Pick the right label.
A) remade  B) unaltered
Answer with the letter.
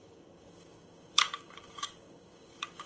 A